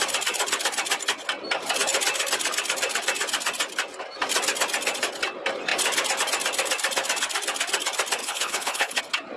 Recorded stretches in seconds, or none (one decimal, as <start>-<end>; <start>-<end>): 0.0-8.2; 9.0-9.4